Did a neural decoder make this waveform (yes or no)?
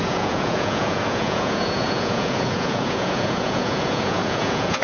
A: yes